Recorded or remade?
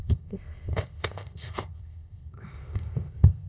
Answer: remade